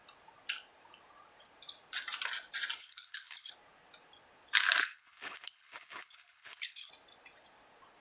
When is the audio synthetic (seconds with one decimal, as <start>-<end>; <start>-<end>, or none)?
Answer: 2.8-3.5; 4.8-6.9